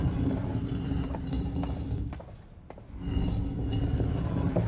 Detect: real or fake real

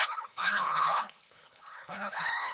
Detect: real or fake fake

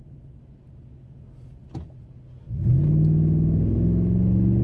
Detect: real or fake real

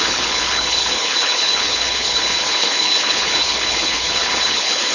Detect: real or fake fake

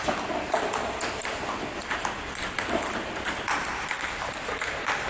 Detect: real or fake real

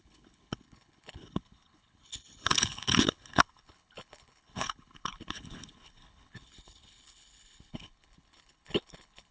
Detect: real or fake fake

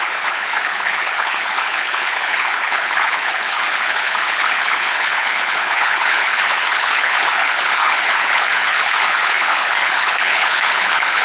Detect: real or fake fake